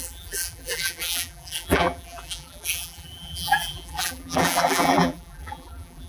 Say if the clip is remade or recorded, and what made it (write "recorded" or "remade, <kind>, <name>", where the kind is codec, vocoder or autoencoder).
remade, vocoder, BigVGAN v2